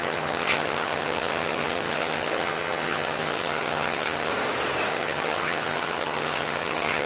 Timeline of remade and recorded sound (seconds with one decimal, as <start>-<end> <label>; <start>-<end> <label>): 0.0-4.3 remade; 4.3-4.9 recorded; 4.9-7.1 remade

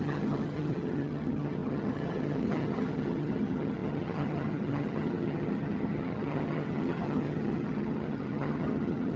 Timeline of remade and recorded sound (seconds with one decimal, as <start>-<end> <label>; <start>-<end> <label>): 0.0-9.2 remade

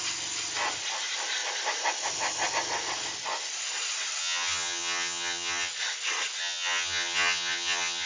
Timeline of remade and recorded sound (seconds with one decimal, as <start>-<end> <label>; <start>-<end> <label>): 0.0-4.2 recorded; 4.2-5.7 remade; 5.7-6.4 recorded; 6.4-8.1 remade

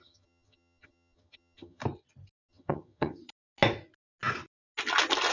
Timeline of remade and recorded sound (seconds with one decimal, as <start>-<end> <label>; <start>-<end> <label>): 0.0-1.8 remade; 1.8-2.5 recorded; 2.5-3.2 remade; 3.2-5.3 recorded

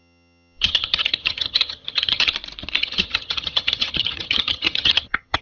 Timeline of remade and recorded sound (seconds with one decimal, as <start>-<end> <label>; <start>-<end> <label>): 0.0-2.3 remade; 2.3-2.8 recorded; 2.8-5.4 remade

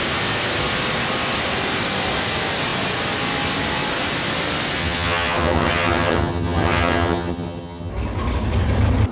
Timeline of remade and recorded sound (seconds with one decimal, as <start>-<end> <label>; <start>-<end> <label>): 0.0-4.8 recorded; 4.8-7.9 remade; 7.9-9.1 recorded

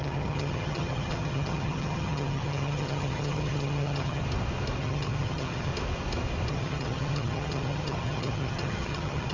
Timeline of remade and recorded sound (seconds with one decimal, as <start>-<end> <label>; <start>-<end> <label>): 0.0-4.2 remade; 4.2-4.8 recorded; 4.8-5.7 remade; 5.7-6.5 recorded; 6.5-9.3 remade